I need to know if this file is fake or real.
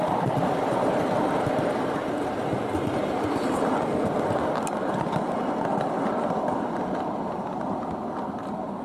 real